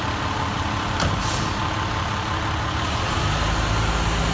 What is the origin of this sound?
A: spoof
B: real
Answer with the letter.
B